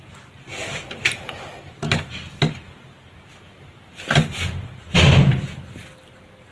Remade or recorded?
recorded